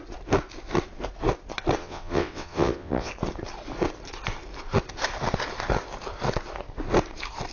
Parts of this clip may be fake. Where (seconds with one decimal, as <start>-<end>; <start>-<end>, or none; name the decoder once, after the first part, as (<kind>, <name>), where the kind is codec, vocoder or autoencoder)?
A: 1.8-3.1 (vocoder, WaveNeXt)

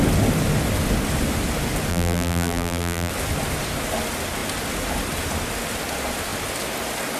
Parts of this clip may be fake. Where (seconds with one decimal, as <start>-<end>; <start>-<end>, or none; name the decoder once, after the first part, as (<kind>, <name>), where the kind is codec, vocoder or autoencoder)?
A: 1.9-3.1 (vocoder, BigVGAN v2)